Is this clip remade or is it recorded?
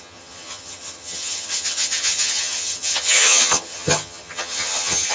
remade